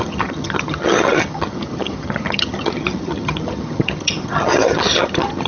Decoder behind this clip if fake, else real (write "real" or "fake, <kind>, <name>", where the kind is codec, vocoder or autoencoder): fake, vocoder, HiFi-GAN